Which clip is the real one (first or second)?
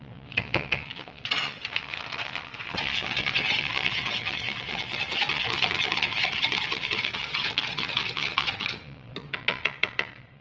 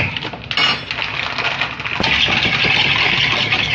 second